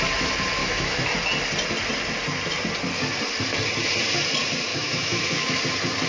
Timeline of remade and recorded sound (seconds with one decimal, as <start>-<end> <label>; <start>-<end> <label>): 0.0-0.6 recorded; 0.6-1.1 remade; 1.1-4.7 recorded; 4.7-5.6 remade; 5.6-6.1 recorded